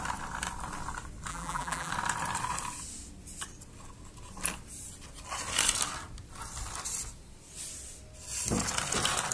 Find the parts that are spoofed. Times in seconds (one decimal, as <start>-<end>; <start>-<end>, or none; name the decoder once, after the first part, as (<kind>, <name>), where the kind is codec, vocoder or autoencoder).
1.3-1.9 (vocoder, BigVGAN v2)